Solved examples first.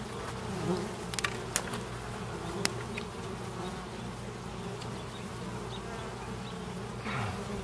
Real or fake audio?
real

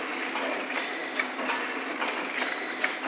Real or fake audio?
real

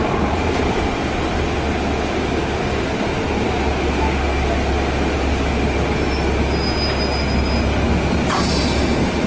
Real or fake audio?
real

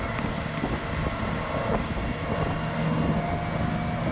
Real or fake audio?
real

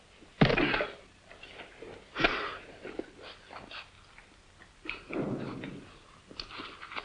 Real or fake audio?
real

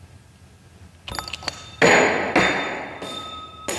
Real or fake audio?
real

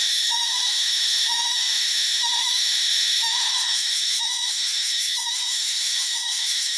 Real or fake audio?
fake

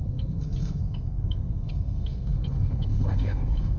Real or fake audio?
fake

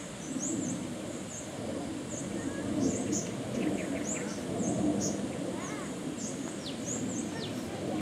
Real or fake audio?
real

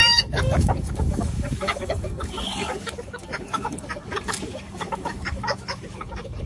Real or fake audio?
fake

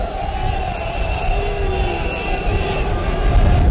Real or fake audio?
real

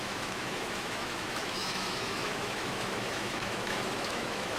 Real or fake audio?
fake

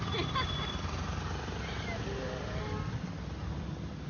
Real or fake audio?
real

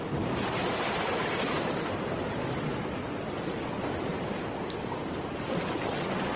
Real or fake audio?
real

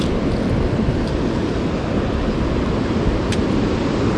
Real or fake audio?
real